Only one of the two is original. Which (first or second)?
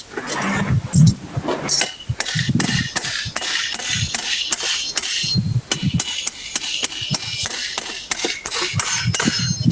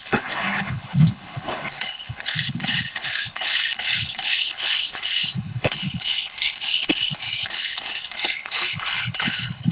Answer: first